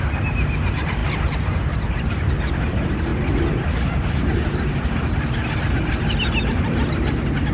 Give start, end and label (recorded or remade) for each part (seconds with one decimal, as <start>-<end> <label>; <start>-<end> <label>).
0.0-7.5 recorded